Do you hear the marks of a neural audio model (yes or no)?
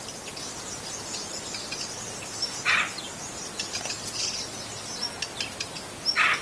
no